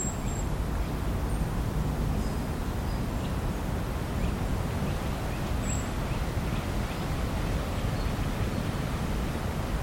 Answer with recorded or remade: recorded